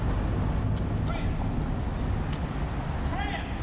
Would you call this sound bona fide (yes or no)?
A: yes